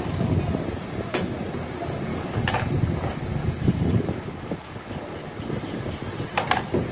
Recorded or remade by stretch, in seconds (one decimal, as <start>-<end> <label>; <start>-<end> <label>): 0.0-2.1 recorded; 2.1-2.7 remade; 2.7-3.4 recorded; 3.4-5.0 remade; 5.0-6.9 recorded